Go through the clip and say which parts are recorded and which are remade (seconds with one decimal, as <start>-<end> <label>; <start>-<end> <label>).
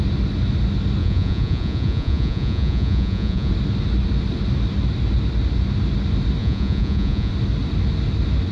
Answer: 0.0-1.0 recorded; 1.0-3.5 remade; 3.5-6.4 recorded; 6.4-7.3 remade; 7.3-8.5 recorded